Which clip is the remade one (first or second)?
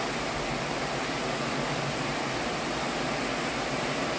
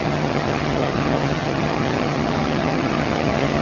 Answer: second